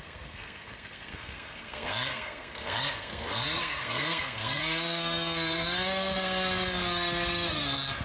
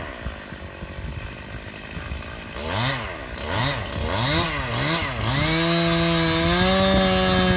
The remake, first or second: first